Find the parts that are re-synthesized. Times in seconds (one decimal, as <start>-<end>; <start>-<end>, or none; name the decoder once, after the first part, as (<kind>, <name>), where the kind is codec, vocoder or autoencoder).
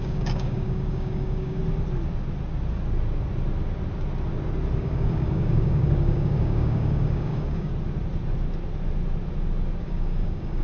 0.0-1.6 (codec, DAC); 4.8-7.7; 9.8-10.6